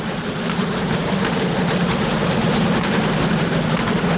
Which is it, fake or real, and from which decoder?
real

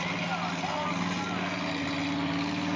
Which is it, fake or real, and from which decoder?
real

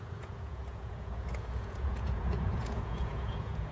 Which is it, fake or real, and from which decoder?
fake, vocoder, Vocos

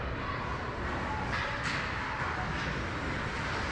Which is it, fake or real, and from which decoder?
real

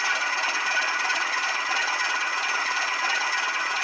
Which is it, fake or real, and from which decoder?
fake, vocoder, Vocos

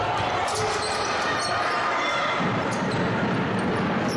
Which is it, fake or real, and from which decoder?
real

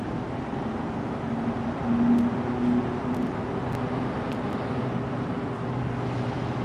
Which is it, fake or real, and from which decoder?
real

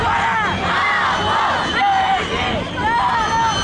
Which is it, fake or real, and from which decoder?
real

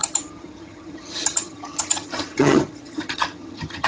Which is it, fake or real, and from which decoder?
fake, vocoder, HiFi-GAN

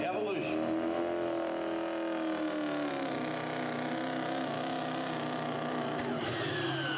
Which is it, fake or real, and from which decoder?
real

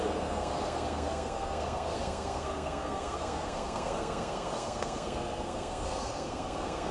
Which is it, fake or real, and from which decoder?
fake, codec, SNAC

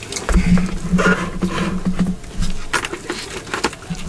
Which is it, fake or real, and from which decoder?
real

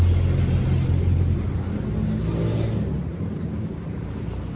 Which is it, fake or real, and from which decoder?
real